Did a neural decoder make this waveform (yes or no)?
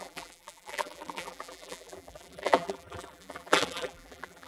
yes